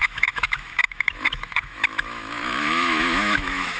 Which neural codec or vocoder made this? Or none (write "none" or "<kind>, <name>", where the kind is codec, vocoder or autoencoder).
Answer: autoencoder, DAC-VAE